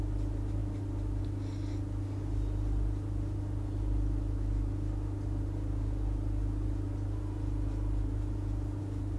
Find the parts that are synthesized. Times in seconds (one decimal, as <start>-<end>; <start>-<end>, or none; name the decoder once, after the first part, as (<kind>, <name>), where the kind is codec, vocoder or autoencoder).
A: none